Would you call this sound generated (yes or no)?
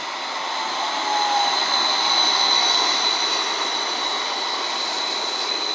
no